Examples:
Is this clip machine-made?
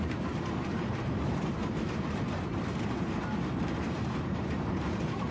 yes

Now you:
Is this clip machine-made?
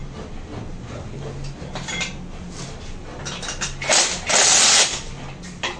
no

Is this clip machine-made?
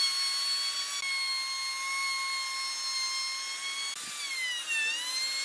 no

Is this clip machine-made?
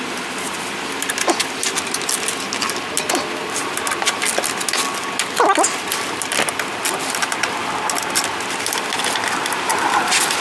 no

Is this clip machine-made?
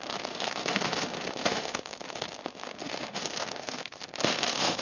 yes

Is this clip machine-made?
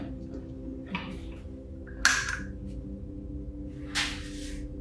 no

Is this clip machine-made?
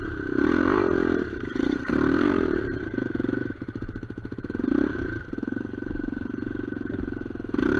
yes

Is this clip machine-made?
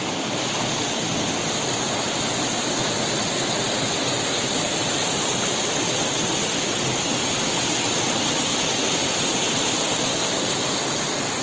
no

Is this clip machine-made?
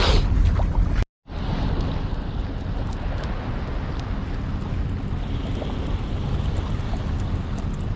no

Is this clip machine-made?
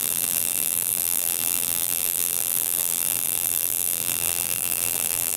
yes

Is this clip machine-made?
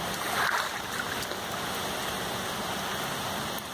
no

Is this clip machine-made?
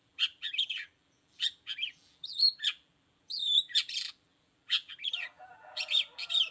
yes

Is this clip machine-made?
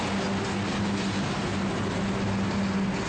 no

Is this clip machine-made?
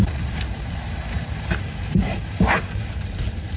yes